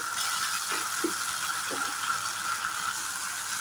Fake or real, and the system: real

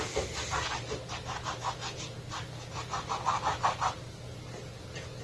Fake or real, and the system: real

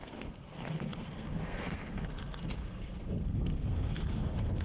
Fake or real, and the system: fake, codec, SNAC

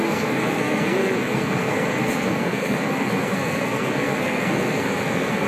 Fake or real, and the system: fake, codec, SNAC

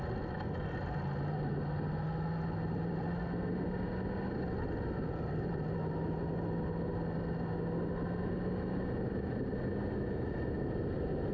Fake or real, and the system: real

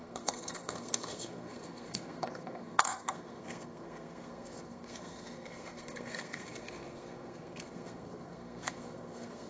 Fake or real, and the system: fake, codec, SNAC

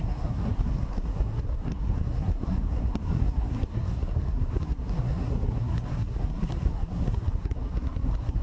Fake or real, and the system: fake, codec, SNAC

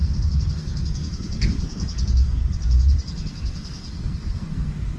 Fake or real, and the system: fake, codec, SNAC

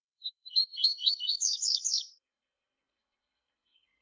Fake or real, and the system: fake, codec, SNAC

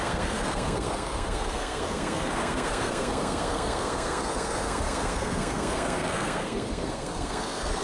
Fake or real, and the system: fake, codec, SNAC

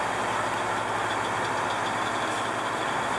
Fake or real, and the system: real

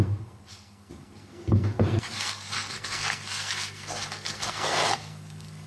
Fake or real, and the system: fake, codec, SNAC